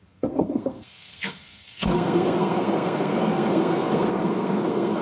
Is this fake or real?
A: fake